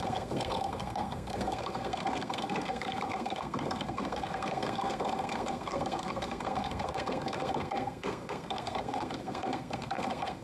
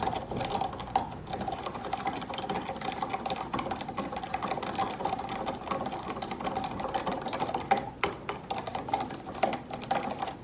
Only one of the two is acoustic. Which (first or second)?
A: second